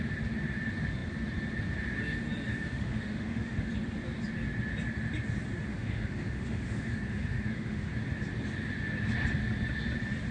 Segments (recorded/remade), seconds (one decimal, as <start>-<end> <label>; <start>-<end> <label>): 0.0-2.5 recorded; 2.5-3.7 remade; 3.7-5.7 recorded; 5.7-7.9 remade; 7.9-10.3 recorded

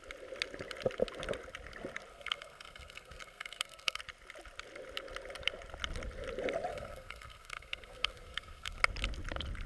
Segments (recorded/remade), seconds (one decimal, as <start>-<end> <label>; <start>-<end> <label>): 0.0-2.1 recorded; 2.1-4.0 remade; 4.0-6.7 recorded; 6.7-8.8 remade; 8.8-9.7 recorded

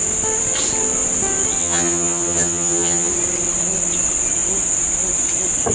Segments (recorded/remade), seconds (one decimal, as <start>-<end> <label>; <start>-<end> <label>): 0.0-1.6 recorded; 1.6-3.1 remade; 3.1-5.7 recorded

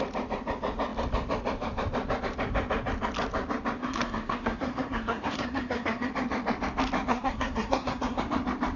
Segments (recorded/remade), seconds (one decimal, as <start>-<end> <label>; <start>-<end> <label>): 0.0-3.8 recorded; 3.8-6.1 remade; 6.1-7.1 recorded; 7.1-8.2 remade; 8.2-8.8 recorded

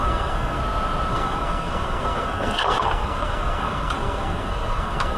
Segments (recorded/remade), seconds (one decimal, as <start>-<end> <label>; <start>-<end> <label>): 0.0-0.6 remade; 0.6-1.1 recorded; 1.1-5.2 remade